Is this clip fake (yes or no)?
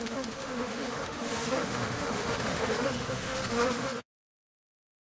yes